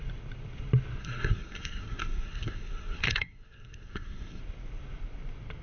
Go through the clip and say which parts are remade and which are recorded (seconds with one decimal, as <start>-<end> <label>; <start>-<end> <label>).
0.0-1.0 recorded; 1.0-4.4 remade; 4.4-5.6 recorded